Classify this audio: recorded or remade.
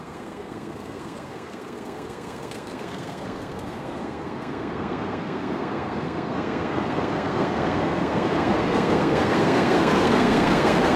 remade